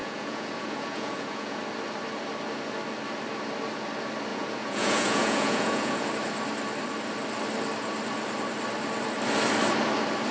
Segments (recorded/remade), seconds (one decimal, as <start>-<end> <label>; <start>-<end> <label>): 0.0-1.6 remade; 1.6-4.3 recorded; 4.3-6.1 remade; 6.1-10.3 recorded